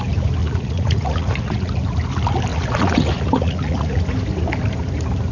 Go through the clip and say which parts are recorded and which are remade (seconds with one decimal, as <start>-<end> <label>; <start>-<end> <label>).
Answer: 0.0-0.4 recorded; 0.4-1.7 remade; 1.7-2.5 recorded; 2.5-4.0 remade; 4.0-5.3 recorded